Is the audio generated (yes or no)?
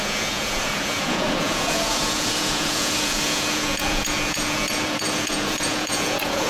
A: yes